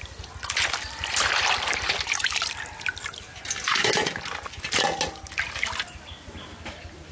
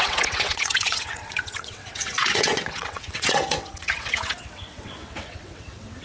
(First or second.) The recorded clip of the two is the first